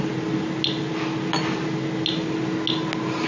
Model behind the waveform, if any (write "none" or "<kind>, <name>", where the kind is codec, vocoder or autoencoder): none